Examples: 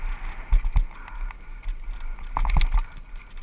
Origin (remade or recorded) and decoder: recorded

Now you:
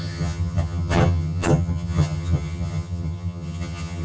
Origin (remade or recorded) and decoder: remade, vocoder, HiFi-GAN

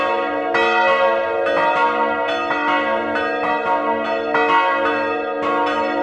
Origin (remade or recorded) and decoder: recorded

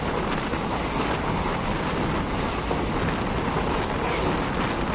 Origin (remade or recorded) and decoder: recorded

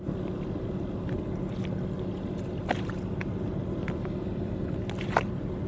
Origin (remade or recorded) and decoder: recorded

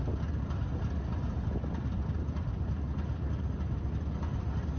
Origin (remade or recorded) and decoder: recorded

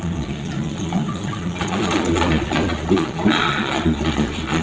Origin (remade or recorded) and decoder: remade, vocoder, Vocos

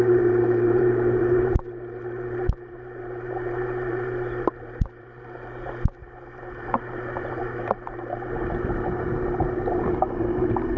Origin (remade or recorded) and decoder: remade, vocoder, BigVGAN v2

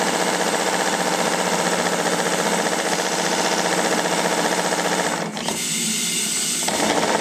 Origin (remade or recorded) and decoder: recorded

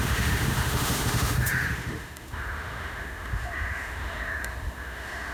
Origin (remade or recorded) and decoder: remade, autoencoder, DAC-VAE